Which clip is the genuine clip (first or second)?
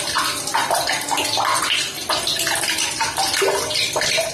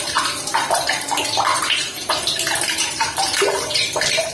first